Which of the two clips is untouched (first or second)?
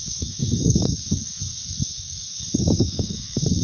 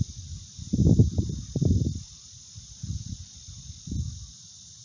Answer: second